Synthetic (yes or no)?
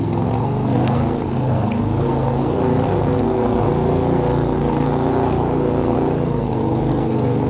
yes